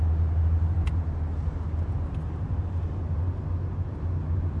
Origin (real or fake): real